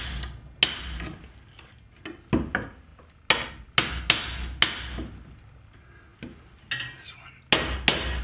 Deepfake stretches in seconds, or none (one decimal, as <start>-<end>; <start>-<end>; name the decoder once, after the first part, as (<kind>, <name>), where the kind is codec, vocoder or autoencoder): none

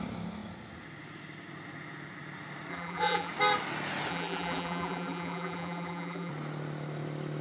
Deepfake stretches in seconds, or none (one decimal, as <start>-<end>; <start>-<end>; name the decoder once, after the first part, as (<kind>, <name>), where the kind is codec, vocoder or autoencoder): 2.7-3.3 (vocoder, BigVGAN v2); 4.1-6.3

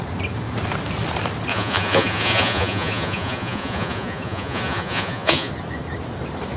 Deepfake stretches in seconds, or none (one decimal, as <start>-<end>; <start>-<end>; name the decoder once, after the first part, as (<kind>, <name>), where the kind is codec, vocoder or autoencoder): 1.5-5.5 (vocoder, Vocos)

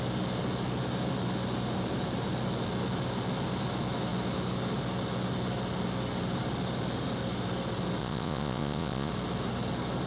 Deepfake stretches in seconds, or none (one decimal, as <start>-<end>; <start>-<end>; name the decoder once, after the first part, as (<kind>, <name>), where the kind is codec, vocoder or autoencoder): 8.0-9.1 (vocoder, Vocos)

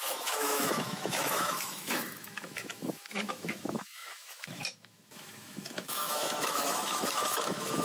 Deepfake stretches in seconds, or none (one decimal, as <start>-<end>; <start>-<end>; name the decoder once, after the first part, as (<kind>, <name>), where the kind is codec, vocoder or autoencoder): 0.0-7.8 (autoencoder, DAC-VAE)

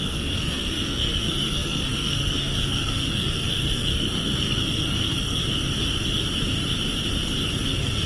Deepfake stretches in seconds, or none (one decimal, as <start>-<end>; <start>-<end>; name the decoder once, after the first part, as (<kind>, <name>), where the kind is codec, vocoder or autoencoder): 0.0-5.4 (codec, SNAC); 7.6-8.1

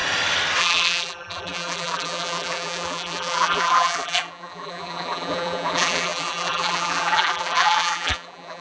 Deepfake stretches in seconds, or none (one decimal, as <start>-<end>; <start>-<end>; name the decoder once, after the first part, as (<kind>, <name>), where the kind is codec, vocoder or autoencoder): 0.6-8.6 (vocoder, BigVGAN v2)

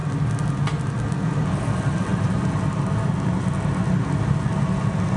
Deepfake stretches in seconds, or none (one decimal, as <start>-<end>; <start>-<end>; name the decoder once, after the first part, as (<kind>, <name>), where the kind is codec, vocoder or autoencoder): none